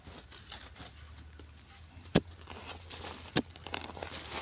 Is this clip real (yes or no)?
yes